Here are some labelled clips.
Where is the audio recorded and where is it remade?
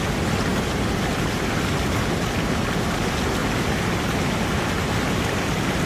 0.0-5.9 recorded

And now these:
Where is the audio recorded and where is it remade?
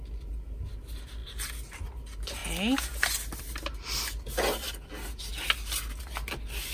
0.0-6.7 recorded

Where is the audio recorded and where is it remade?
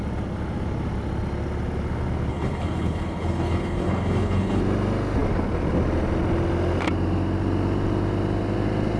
0.0-2.3 recorded; 2.3-4.6 remade; 4.6-9.0 recorded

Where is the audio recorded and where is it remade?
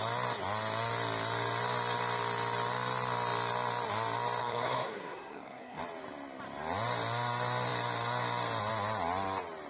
0.0-4.4 recorded; 4.4-5.8 remade; 5.8-9.7 recorded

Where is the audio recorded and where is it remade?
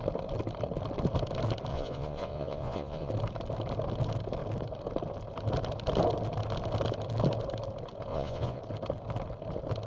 0.0-1.7 recorded; 1.7-3.1 remade; 3.1-8.1 recorded; 8.1-8.6 remade; 8.6-9.9 recorded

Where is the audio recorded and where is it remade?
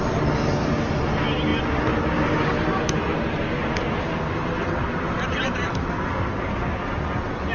0.0-7.5 recorded